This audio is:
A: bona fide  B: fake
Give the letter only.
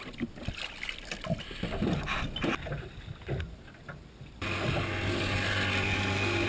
A